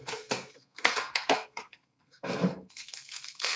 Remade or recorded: remade